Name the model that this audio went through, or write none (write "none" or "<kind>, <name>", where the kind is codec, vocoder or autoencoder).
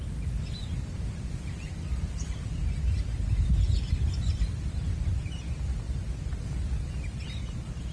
none